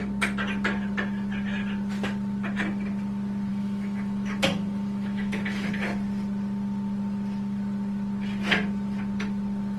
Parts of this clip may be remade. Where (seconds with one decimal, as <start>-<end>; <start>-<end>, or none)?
3.5-5.7